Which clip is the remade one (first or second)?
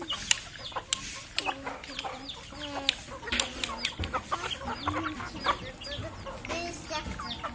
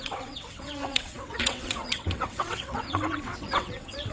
second